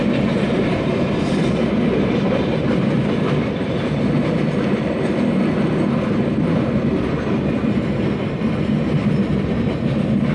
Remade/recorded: recorded